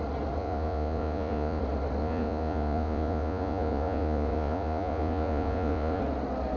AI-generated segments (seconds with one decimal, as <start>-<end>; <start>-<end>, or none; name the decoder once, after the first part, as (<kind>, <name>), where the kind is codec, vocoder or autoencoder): 0.4-1.6 (vocoder, Vocos); 2.0-6.0